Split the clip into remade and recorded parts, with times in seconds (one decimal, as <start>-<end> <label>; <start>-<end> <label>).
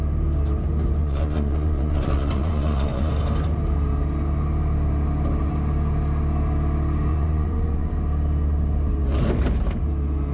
0.0-1.0 recorded; 1.0-3.1 remade; 3.1-7.1 recorded; 7.1-7.9 remade; 7.9-10.3 recorded